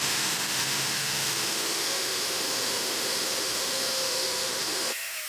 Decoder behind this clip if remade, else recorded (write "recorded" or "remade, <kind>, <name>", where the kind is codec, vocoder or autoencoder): remade, autoencoder, DAC-VAE